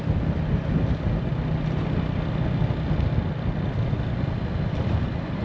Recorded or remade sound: recorded